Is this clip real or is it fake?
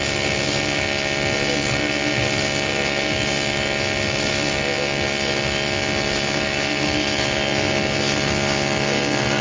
real